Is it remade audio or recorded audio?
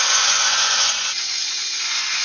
remade